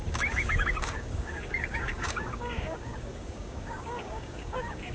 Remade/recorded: remade